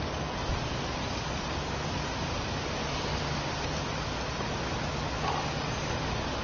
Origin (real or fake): real